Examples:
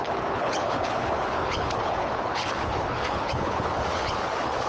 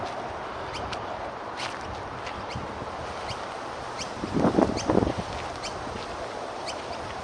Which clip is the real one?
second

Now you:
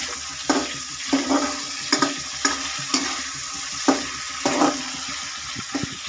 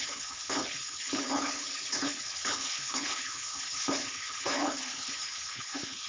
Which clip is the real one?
first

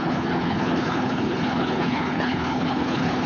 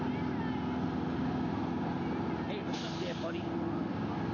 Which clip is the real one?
second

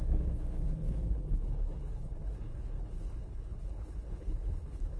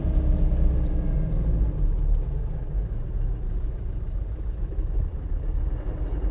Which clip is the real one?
second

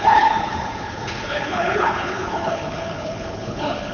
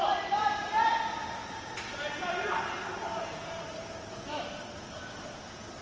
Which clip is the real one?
second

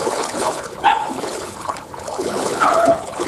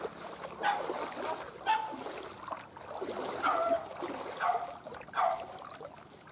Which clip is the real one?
second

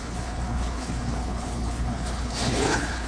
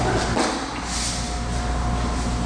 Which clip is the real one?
second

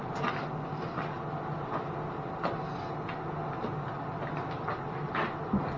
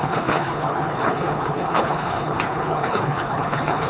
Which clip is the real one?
first